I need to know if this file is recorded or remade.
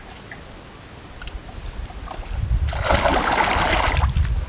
recorded